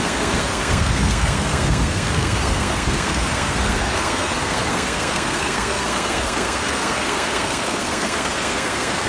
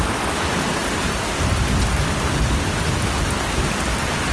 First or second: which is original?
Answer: second